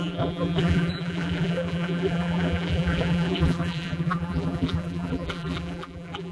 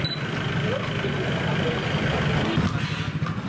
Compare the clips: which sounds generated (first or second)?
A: first